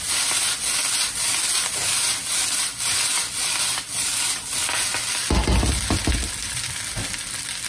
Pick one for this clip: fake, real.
real